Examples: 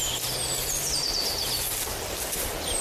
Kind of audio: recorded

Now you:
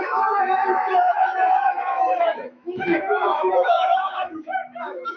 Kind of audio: remade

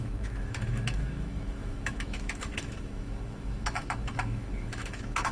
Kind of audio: remade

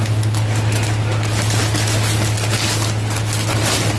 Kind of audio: recorded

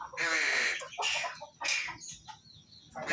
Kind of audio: recorded